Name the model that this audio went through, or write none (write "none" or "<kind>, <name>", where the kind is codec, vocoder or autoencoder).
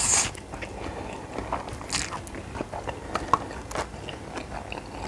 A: none